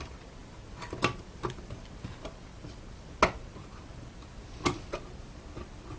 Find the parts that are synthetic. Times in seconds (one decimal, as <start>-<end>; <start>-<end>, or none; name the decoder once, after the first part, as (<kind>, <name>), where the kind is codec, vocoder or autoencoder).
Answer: none